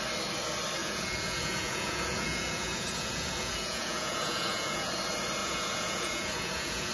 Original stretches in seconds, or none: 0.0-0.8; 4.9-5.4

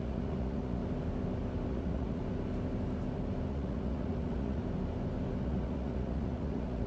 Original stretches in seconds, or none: 0.8-1.7; 2.2-3.5; 4.6-5.4